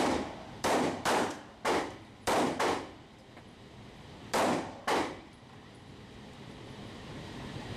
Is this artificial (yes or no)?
yes